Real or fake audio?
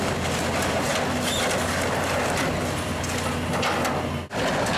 real